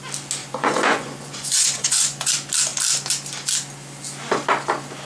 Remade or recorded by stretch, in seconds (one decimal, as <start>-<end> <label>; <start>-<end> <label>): 0.0-0.4 recorded; 0.4-2.3 remade; 2.3-5.0 recorded